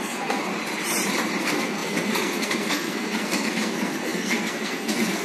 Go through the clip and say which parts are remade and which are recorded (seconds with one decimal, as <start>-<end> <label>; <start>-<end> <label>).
0.0-0.5 remade; 0.5-1.4 recorded; 1.4-5.2 remade